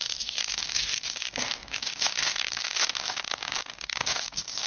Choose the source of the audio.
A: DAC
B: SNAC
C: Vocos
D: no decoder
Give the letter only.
A